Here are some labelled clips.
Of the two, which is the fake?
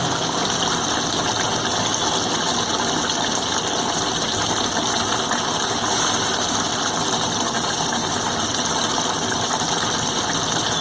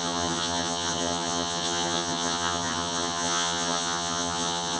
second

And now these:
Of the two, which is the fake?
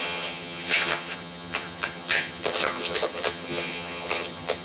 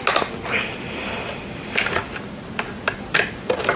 first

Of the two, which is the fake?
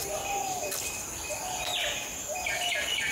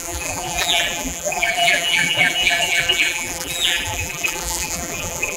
second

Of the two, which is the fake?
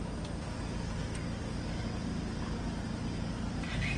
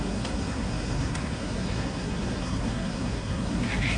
second